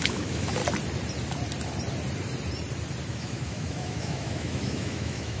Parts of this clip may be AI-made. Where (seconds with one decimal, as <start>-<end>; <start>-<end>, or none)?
0.0-0.6; 3.1-5.4